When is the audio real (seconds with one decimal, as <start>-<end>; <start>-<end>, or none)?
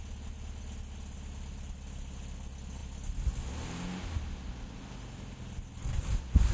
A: 0.0-6.5